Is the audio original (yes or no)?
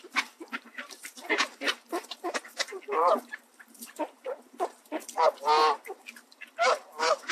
no